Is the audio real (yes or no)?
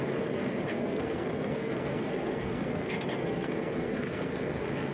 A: no